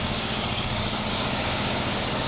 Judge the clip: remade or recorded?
remade